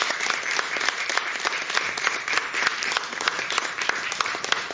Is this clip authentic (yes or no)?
no